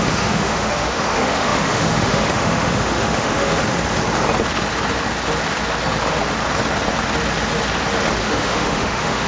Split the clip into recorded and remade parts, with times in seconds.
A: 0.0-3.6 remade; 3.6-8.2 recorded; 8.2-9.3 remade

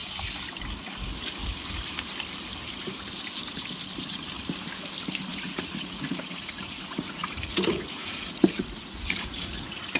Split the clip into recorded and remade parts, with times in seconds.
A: 0.0-5.3 recorded; 5.3-10.0 remade

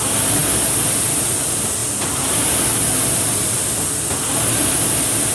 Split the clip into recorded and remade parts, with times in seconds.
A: 0.0-5.3 recorded

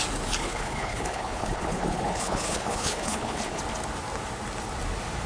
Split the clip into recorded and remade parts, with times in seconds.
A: 0.0-0.4 recorded; 0.4-3.6 remade; 3.6-5.3 recorded

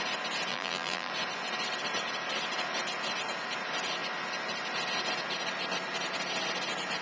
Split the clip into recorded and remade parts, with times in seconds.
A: 0.0-0.5 recorded; 0.5-1.1 remade; 1.1-7.0 recorded

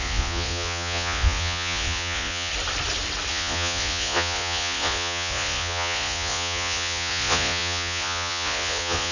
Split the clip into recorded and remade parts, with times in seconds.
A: 0.0-2.5 remade; 2.5-3.3 recorded; 3.3-9.1 remade